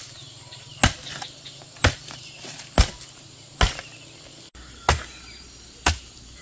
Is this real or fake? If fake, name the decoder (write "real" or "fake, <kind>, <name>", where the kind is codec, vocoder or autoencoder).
real